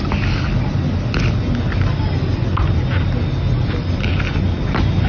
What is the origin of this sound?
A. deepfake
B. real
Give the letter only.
B